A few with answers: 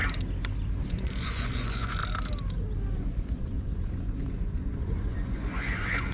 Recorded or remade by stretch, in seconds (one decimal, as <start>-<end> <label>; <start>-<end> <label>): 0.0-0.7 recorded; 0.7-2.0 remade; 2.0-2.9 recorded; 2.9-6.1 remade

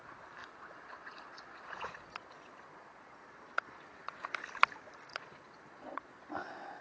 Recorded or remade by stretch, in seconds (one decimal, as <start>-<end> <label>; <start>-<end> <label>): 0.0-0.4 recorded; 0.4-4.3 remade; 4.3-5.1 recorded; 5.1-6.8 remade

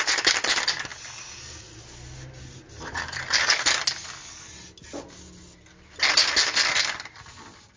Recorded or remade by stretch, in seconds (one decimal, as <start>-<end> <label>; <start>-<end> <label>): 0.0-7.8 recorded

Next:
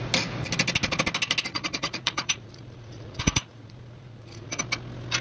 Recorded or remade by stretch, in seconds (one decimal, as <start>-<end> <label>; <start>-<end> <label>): 0.0-1.5 recorded; 1.5-4.6 remade; 4.6-5.2 recorded

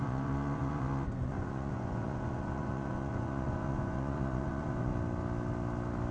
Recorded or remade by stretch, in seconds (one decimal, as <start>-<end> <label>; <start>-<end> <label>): 0.0-4.9 remade; 4.9-6.1 recorded

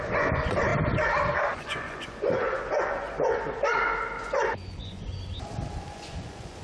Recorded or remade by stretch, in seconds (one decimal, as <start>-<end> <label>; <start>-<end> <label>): 0.0-0.7 remade; 0.7-1.5 recorded; 1.5-3.7 remade; 3.7-4.2 recorded; 4.2-5.1 remade; 5.1-5.9 recorded; 5.9-6.6 remade